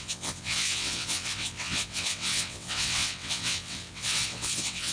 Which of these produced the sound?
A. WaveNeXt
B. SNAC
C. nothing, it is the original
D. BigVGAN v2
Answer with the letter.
A